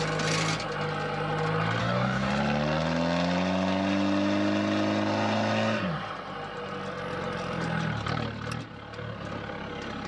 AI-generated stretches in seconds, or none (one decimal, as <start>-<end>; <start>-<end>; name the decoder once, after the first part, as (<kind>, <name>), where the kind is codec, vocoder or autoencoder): 1.8-2.3 (codec, DAC)